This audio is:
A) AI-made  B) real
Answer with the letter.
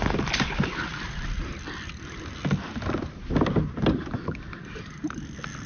B